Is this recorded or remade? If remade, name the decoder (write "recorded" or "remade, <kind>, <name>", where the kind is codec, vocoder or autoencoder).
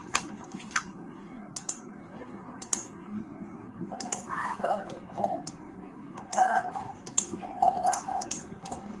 remade, codec, SNAC